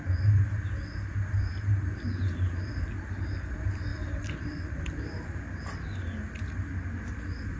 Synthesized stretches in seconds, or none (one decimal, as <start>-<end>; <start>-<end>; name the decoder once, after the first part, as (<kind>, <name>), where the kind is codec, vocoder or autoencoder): 1.7-3.0 (vocoder, BigVGAN v2); 3.9-6.0